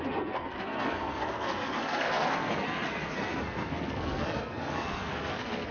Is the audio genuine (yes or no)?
no